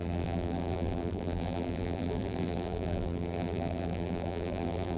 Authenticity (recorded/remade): remade